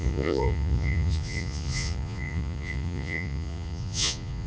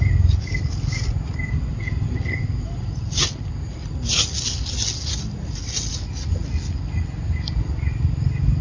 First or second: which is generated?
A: first